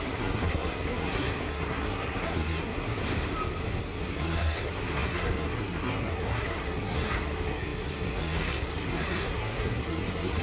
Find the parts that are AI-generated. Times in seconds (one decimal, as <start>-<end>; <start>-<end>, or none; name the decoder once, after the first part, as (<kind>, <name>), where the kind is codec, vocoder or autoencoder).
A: 0.0-3.0 (codec, SNAC); 3.8-10.4